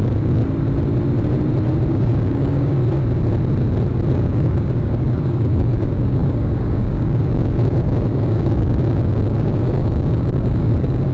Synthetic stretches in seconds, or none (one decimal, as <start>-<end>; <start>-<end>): 0.0-0.4; 1.9-2.8; 4.1-11.1